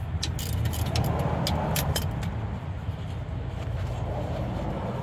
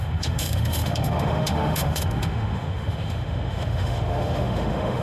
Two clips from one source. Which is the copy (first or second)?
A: second